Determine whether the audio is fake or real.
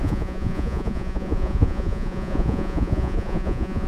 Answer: fake